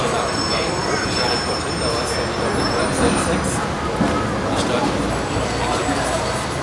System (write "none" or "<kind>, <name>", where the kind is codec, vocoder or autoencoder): none